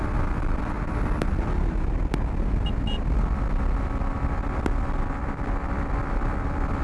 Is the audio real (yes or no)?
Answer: yes